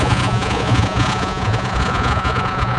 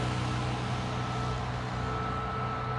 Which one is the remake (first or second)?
first